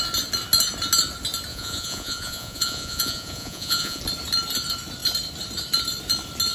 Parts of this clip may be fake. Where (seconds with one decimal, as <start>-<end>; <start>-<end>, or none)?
1.5-4.0